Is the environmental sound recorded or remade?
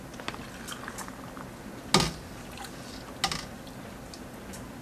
recorded